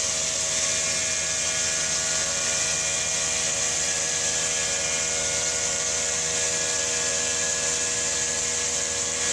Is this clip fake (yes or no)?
no